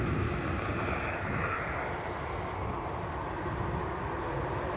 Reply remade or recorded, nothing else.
recorded